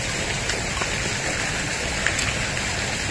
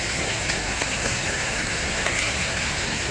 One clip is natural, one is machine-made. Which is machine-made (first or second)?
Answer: second